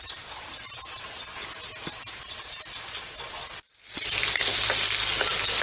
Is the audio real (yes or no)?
yes